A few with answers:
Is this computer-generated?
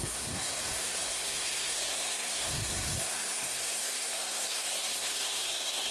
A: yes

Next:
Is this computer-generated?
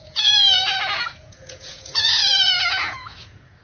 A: yes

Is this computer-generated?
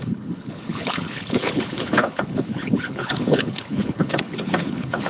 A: yes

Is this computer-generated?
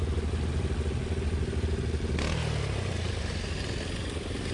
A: no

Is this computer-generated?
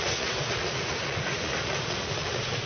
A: yes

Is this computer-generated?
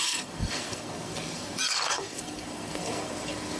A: yes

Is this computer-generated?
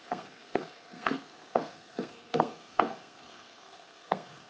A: yes